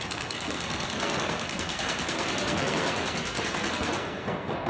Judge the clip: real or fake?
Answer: fake